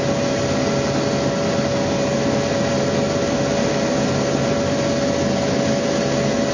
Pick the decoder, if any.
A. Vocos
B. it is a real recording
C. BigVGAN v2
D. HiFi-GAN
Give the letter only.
B